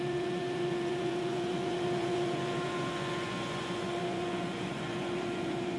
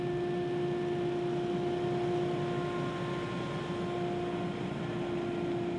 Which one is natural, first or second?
second